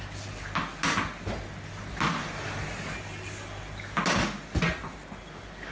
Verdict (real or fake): real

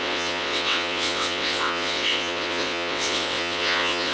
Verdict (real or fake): fake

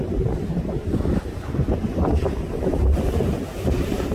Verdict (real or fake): fake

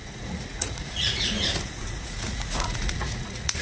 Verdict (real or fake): fake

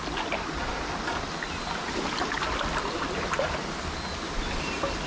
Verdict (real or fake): real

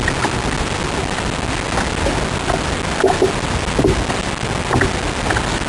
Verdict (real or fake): real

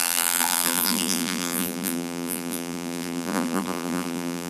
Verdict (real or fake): fake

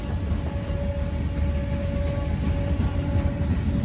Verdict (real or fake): real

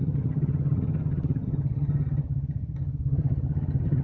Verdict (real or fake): fake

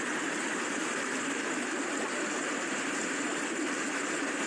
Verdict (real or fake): real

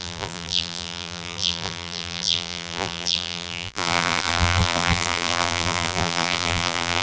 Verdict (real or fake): fake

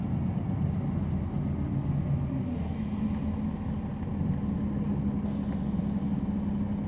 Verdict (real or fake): real